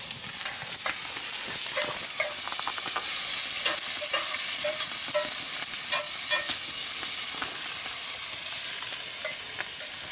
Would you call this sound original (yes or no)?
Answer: yes